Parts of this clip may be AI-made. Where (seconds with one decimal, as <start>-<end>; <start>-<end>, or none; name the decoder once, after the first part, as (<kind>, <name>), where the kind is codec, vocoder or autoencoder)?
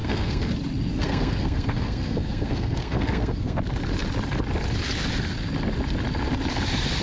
0.0-0.5 (codec, SNAC); 0.9-3.6